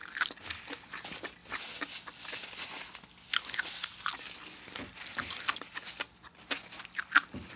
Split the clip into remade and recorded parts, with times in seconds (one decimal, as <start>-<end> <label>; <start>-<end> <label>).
0.0-7.6 recorded